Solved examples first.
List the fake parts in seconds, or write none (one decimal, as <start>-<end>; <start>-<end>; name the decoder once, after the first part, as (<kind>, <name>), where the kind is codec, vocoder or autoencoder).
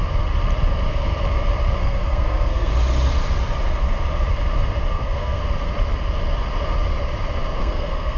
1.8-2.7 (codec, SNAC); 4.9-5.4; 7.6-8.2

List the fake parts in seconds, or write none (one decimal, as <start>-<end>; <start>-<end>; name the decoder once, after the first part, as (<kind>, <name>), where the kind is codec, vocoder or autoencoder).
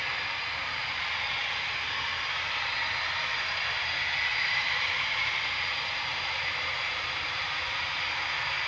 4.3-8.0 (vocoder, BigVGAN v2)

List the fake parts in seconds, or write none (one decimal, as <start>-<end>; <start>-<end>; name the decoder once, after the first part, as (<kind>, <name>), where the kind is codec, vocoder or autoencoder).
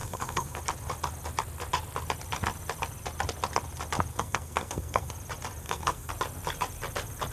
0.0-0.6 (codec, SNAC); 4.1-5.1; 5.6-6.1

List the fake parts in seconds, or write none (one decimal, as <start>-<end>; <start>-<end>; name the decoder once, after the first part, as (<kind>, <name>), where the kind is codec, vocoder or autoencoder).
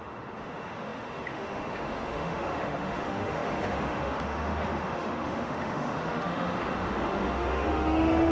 0.0-8.3 (autoencoder, DAC-VAE)